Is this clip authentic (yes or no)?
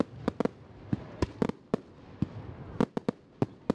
yes